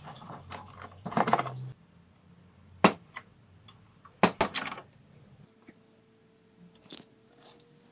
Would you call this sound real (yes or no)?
yes